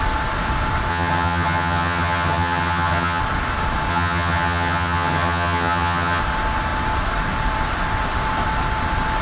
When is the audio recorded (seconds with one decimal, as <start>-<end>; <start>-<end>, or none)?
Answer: 0.0-0.9; 3.2-3.9; 6.2-9.2